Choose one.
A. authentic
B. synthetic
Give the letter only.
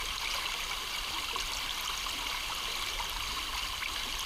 A